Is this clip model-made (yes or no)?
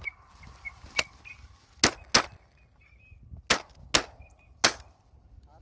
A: no